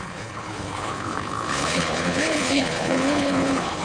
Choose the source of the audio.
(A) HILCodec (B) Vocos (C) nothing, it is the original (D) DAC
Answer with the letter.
A